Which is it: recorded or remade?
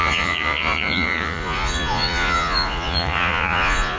remade